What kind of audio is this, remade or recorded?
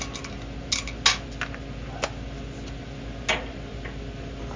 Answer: recorded